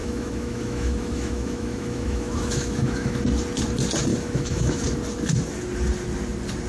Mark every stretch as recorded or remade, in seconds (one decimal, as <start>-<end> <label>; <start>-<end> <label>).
0.0-3.2 remade; 3.2-4.1 recorded; 4.1-4.8 remade; 4.8-6.7 recorded